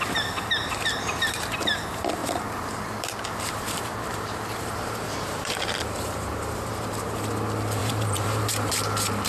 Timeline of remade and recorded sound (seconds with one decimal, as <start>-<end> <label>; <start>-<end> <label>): 0.0-2.2 recorded; 2.2-7.2 remade; 7.2-7.8 recorded; 7.8-8.7 remade; 8.7-9.3 recorded